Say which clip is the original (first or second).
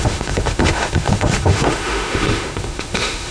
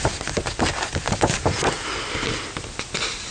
second